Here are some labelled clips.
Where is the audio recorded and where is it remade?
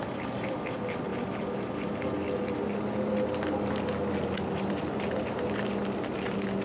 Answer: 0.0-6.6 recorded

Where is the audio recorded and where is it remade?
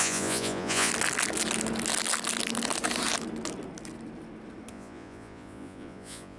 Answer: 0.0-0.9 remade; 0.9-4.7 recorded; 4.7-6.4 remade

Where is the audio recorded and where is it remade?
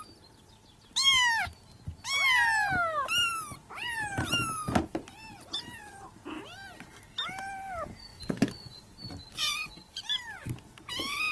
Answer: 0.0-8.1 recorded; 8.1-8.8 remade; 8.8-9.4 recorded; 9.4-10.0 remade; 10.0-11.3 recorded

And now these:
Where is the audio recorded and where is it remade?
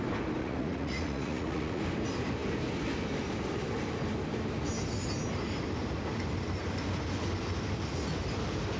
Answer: 0.0-0.4 recorded; 0.4-1.8 remade; 1.8-8.8 recorded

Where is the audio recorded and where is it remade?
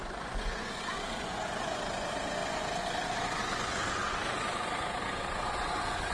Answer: 0.0-6.1 remade